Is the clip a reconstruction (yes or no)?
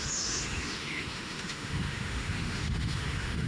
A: yes